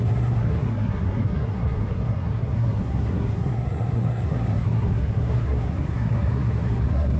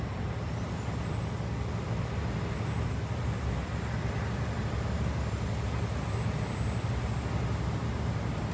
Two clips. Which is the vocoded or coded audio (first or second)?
first